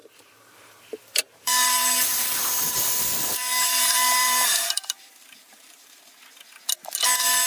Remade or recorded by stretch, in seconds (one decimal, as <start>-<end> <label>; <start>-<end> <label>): 0.0-2.4 remade; 2.4-3.3 recorded; 3.3-6.0 remade; 6.0-7.5 recorded

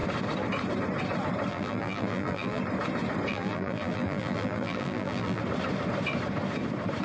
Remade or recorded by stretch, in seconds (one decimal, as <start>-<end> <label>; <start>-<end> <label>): 0.0-1.5 recorded; 1.5-2.6 remade; 2.6-3.3 recorded; 3.3-5.4 remade; 5.4-7.0 recorded